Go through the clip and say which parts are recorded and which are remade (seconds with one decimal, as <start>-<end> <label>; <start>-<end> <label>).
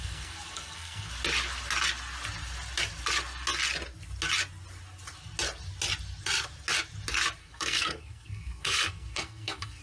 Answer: 0.0-1.1 remade; 1.1-7.4 recorded; 7.4-9.8 remade